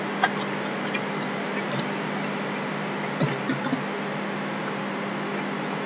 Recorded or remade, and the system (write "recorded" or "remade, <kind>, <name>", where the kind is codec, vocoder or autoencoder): recorded